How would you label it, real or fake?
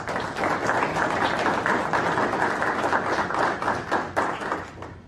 real